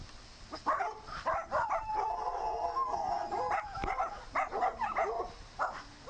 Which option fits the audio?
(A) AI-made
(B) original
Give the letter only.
B